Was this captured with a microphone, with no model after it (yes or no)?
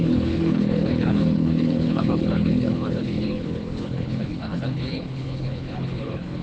no